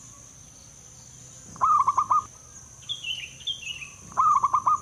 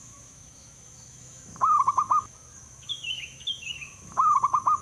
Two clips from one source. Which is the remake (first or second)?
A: second